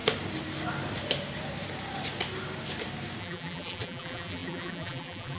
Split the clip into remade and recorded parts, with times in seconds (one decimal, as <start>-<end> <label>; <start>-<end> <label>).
0.0-3.2 recorded; 3.2-5.4 remade